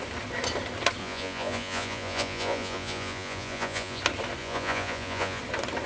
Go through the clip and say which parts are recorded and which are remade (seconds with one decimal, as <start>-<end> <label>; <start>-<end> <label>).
0.0-1.0 recorded; 1.0-4.0 remade; 4.0-4.4 recorded; 4.4-5.4 remade; 5.4-5.9 recorded